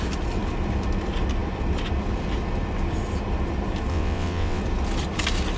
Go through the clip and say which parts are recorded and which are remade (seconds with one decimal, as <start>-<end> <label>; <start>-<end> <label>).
0.0-3.9 recorded; 3.9-4.6 remade; 4.6-5.6 recorded